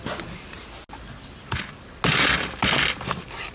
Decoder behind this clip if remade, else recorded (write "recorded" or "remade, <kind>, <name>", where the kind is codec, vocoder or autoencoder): recorded